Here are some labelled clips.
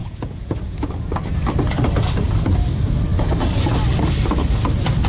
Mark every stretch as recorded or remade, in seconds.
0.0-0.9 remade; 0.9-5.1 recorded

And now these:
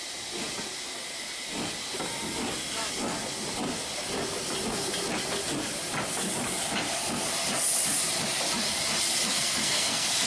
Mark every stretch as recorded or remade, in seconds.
0.0-9.3 recorded; 9.3-10.3 remade

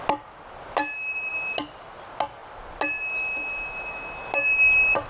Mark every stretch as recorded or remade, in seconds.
0.0-5.1 recorded

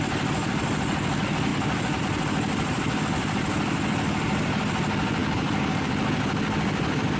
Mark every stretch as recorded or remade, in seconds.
0.0-5.2 recorded; 5.2-5.9 remade; 5.9-7.2 recorded